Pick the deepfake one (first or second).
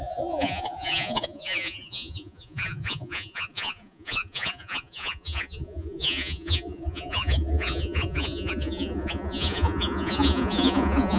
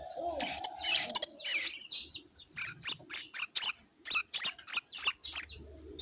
first